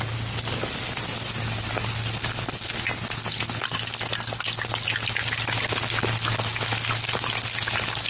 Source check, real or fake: real